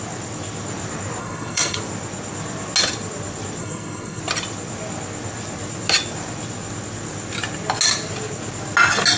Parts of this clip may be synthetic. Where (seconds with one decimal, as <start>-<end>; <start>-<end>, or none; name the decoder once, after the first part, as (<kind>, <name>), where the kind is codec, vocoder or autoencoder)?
1.2-1.8 (codec, SNAC); 3.6-4.2